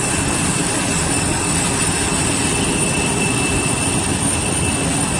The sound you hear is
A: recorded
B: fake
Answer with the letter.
A